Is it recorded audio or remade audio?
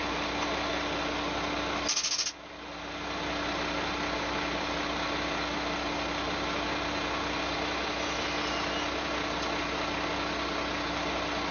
recorded